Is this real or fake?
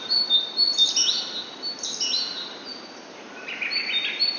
real